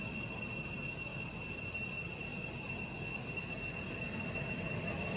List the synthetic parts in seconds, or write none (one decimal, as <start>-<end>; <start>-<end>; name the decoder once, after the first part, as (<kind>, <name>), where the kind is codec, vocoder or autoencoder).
none